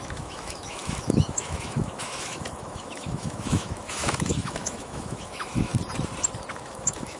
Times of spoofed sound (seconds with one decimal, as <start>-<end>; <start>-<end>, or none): 0.0-5.7; 6.5-7.2